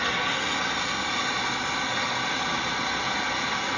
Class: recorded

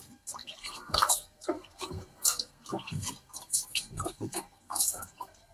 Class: remade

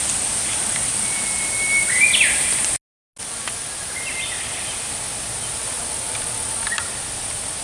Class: recorded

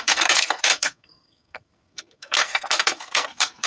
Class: remade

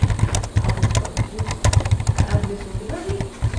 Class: recorded